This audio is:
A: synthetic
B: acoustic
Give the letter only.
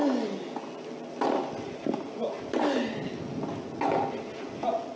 B